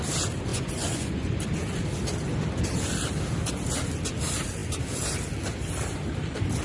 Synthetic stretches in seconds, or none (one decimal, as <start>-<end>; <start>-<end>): 0.5-1.4